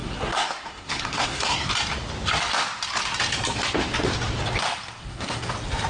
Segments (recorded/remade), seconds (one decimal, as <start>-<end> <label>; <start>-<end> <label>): 0.0-1.7 remade; 1.7-5.0 recorded; 5.0-5.5 remade; 5.5-5.9 recorded